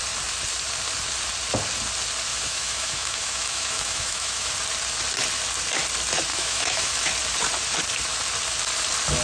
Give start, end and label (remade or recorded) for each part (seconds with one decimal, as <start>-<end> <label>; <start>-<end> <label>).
0.0-2.3 recorded; 2.3-4.5 remade; 4.5-6.3 recorded; 6.3-7.1 remade; 7.1-9.2 recorded